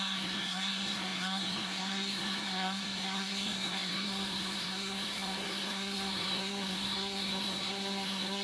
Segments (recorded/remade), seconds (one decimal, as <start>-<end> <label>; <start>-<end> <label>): 0.0-8.4 remade